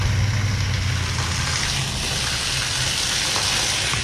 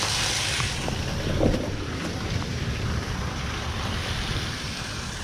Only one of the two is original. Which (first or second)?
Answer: first